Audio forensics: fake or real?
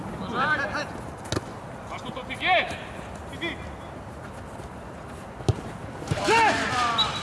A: real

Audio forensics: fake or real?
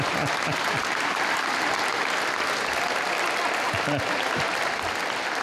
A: real